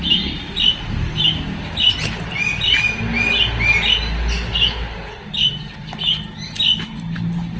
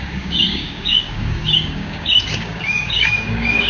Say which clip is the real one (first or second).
first